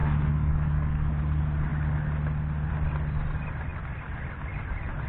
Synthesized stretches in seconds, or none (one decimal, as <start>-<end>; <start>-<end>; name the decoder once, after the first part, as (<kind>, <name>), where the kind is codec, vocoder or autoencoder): 0.0-1.1 (codec, DAC)